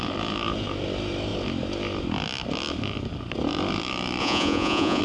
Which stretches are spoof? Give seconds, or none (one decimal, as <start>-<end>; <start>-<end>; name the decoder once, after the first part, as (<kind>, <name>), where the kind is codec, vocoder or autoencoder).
4.2-5.0 (vocoder, Vocos)